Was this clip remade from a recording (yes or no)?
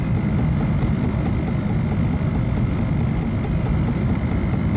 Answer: yes